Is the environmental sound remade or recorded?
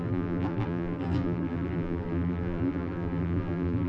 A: remade